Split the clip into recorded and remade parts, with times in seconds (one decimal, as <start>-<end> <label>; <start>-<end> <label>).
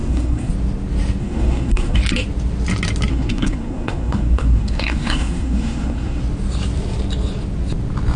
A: 0.0-0.5 remade; 0.5-1.2 recorded; 1.2-2.0 remade; 2.0-3.1 recorded; 3.1-6.2 remade; 6.2-8.2 recorded